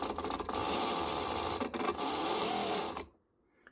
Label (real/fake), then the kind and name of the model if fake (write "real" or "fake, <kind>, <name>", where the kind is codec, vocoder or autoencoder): real